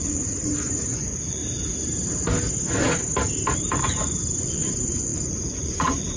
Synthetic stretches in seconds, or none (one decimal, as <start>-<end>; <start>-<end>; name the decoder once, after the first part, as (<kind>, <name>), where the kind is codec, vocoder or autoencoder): 0.0-1.4 (vocoder, Vocos); 3.8-6.2